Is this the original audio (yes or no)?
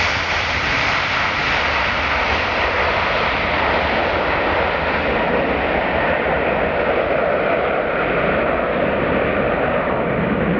yes